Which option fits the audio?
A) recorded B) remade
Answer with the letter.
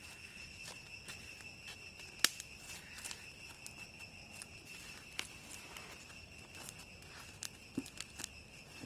A